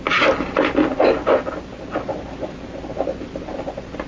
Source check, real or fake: real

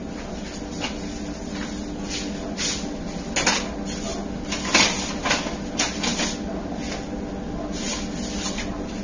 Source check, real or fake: real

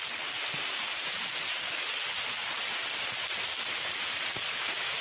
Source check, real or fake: real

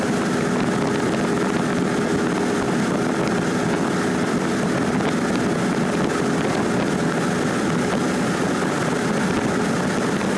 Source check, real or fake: real